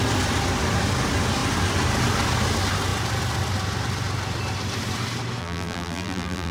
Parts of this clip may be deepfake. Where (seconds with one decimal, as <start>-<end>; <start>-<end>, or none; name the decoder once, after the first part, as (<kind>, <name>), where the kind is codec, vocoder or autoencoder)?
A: 5.4-6.5 (vocoder, BigVGAN v2)